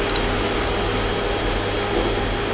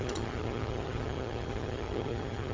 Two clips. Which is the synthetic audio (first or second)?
second